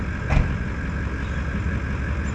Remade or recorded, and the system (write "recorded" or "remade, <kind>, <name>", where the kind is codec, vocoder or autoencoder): recorded